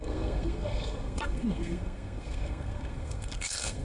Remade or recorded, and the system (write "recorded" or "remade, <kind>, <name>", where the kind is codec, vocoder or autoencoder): remade, codec, SNAC